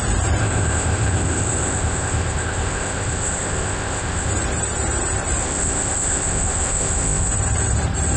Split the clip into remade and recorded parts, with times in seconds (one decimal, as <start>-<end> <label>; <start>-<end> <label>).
0.0-0.4 recorded; 0.4-4.3 remade; 4.3-5.4 recorded; 5.4-7.3 remade; 7.3-8.2 recorded